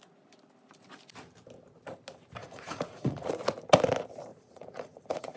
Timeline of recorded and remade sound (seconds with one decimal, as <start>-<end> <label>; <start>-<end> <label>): 0.0-2.4 recorded; 2.4-3.3 remade; 3.3-4.3 recorded; 4.3-5.4 remade